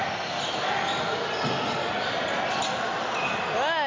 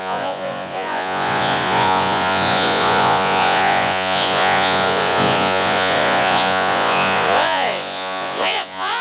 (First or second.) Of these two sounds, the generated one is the second